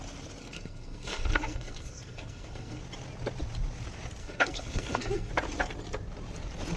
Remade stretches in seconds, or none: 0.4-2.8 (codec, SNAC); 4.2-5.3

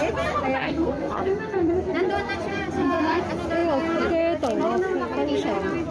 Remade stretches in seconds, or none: 0.6-1.7 (codec, SNAC); 2.5-3.2